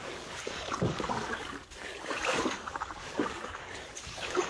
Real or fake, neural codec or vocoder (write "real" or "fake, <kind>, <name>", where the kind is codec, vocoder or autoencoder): fake, codec, DAC